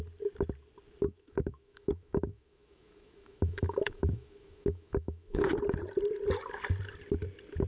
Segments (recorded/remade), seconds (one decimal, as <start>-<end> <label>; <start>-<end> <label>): 0.0-1.0 recorded; 1.0-5.5 remade; 5.5-7.7 recorded

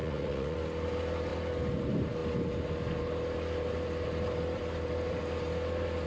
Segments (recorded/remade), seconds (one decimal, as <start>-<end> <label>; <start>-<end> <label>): 0.0-0.6 remade; 0.6-6.1 recorded

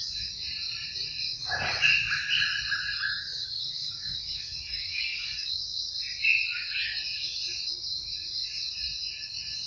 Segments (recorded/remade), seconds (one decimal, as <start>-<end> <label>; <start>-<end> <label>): 0.0-3.3 recorded; 3.3-5.5 remade; 5.5-9.7 recorded

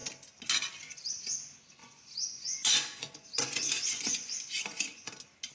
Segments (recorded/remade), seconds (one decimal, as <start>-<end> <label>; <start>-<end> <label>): 0.0-1.8 recorded; 1.8-5.1 remade; 5.1-5.5 recorded

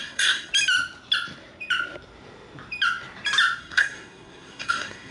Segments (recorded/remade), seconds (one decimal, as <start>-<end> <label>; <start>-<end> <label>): 0.0-0.5 remade; 0.5-3.6 recorded; 3.6-5.1 remade

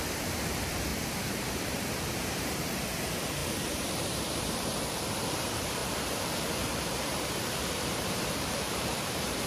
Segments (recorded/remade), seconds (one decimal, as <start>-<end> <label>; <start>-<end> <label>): 0.0-0.9 remade; 0.9-1.4 recorded; 1.4-9.5 remade